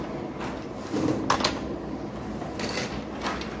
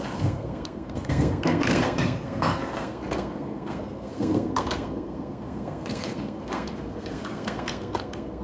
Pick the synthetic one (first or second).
second